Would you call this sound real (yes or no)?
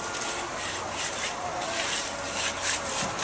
no